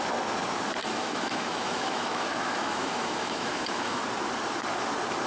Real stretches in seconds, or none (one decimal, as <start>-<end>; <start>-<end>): 0.0-0.8; 4.0-5.3